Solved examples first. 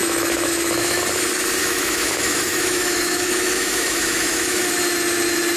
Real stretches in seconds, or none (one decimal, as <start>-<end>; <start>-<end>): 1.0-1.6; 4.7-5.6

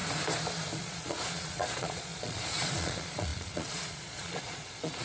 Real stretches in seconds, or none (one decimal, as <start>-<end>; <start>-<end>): 0.0-0.8

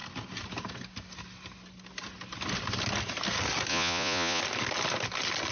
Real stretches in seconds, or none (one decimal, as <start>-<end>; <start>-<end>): 0.0-3.7; 4.4-5.5

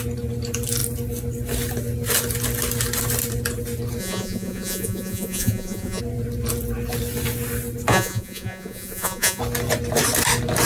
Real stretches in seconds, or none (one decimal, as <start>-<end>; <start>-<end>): 0.0-4.0; 6.0-7.9; 9.4-10.7

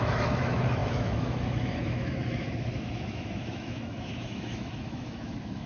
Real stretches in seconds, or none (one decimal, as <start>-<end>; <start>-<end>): none

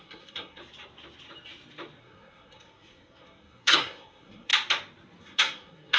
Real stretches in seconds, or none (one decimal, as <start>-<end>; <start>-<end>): 0.6-2.0; 4.5-5.2

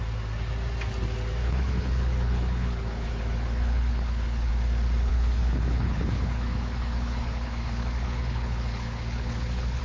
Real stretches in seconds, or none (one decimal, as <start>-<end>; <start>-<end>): 0.0-1.4; 4.5-5.1